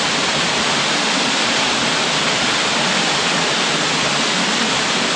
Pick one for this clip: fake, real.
real